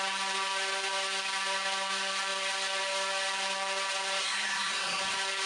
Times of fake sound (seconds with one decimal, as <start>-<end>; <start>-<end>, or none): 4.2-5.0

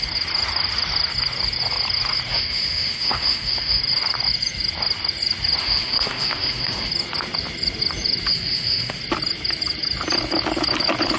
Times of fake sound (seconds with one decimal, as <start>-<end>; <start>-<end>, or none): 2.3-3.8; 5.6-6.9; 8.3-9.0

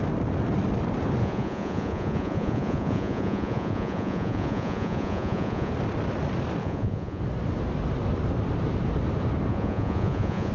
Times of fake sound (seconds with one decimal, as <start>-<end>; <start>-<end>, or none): 1.2-5.7; 6.6-7.2; 9.5-10.5